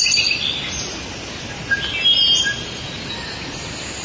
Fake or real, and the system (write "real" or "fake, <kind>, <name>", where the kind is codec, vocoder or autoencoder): real